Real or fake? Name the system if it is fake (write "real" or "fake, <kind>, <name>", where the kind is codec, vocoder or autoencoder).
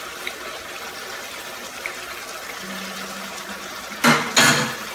real